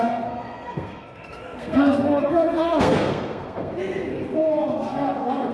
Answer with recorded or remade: remade